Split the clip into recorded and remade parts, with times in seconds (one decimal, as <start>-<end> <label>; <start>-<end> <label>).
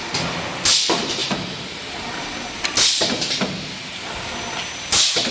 0.0-5.3 recorded